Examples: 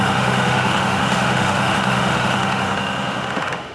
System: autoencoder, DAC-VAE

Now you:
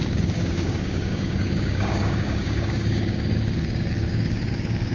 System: codec, DAC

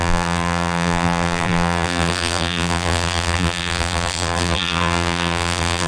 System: vocoder, BigVGAN v2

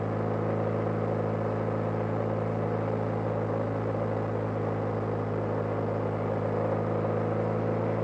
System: none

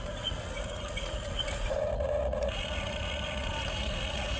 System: vocoder, Vocos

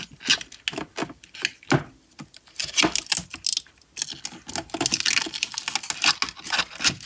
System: none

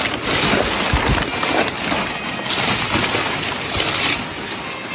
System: none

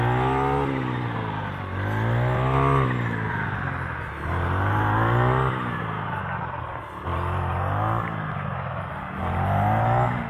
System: none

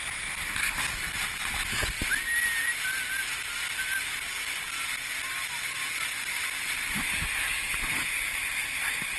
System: none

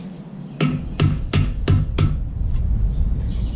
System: none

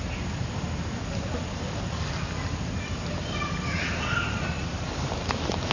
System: none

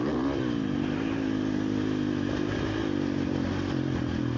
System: none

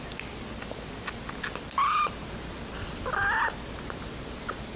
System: none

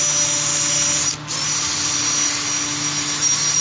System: none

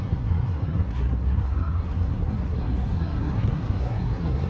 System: codec, SNAC